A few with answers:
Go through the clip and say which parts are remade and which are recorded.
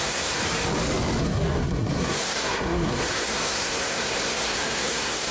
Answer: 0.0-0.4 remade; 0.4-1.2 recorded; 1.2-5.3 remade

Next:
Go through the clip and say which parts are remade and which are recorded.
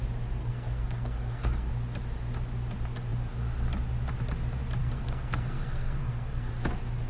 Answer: 0.0-0.4 recorded; 0.4-1.7 remade; 1.7-4.8 recorded; 4.8-6.5 remade; 6.5-7.1 recorded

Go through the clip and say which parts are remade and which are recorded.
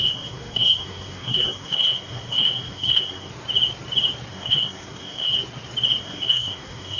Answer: 0.0-3.3 remade; 3.3-4.3 recorded; 4.3-5.3 remade; 5.3-6.0 recorded; 6.0-7.0 remade